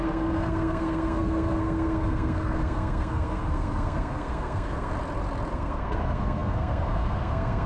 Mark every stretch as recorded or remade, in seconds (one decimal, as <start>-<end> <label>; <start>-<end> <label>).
0.0-4.9 remade; 4.9-5.5 recorded; 5.5-7.7 remade